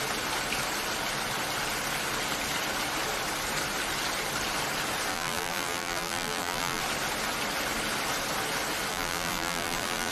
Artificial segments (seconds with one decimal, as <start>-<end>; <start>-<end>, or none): 5.1-6.8; 8.9-10.1